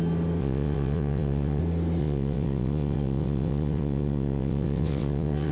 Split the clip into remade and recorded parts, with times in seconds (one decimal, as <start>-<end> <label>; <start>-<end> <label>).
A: 0.0-0.4 recorded; 0.4-1.6 remade; 1.6-2.0 recorded; 2.0-5.5 remade